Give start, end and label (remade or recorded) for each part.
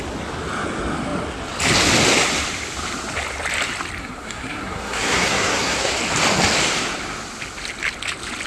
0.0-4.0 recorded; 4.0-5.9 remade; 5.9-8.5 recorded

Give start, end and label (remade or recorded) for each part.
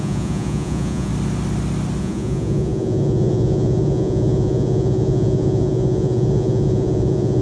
0.0-1.1 remade; 1.1-2.0 recorded; 2.0-7.4 remade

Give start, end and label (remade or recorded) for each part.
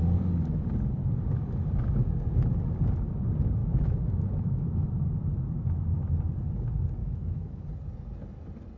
0.0-3.6 recorded; 3.6-4.8 remade; 4.8-7.0 recorded; 7.0-7.7 remade; 7.7-8.8 recorded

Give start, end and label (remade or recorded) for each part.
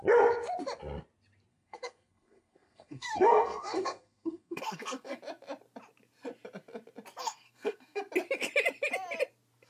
0.0-1.5 recorded; 1.5-5.2 remade; 5.2-7.2 recorded; 7.2-8.0 remade; 8.0-9.7 recorded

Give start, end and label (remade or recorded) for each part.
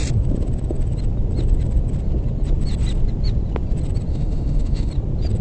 0.0-4.1 recorded; 4.1-4.9 remade; 4.9-5.4 recorded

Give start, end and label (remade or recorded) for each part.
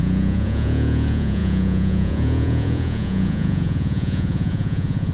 0.0-5.1 remade